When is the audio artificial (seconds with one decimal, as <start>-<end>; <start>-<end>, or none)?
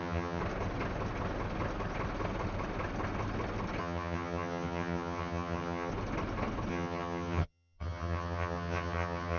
0.0-0.4; 3.8-5.9; 6.7-9.4